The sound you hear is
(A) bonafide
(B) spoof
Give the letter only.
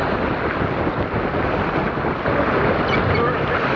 A